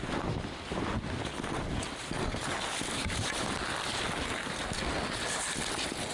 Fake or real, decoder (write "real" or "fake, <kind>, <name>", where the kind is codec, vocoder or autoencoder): real